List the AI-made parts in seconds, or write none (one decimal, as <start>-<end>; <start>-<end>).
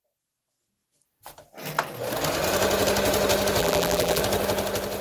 3.6-4.2